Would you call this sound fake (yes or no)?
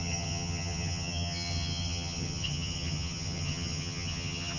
yes